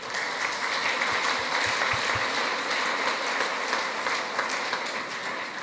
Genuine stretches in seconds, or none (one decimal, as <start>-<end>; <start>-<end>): 0.0-5.6